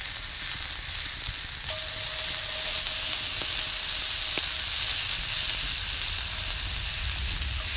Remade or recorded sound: recorded